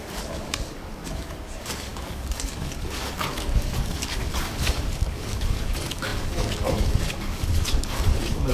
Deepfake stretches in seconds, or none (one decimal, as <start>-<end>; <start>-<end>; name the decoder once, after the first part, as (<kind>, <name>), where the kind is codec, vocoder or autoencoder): 0.0-8.5 (codec, DAC)